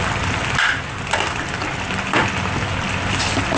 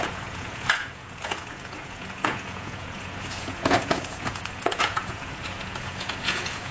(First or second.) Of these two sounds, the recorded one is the first